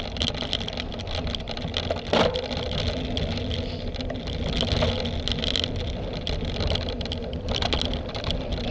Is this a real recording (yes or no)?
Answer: yes